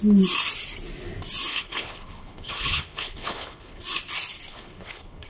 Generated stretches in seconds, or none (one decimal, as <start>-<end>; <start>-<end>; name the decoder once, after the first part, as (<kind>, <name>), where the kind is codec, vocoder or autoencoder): 1.5-3.8 (codec, HILCodec); 4.5-5.3